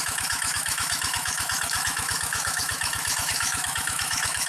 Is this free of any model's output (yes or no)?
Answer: no